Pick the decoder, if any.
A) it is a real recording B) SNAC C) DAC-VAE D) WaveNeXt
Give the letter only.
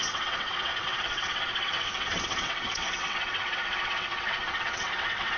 D